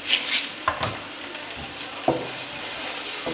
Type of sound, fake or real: real